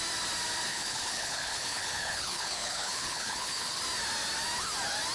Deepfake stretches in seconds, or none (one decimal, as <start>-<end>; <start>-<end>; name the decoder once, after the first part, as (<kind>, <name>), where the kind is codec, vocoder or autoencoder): 0.7-3.8 (codec, HILCodec)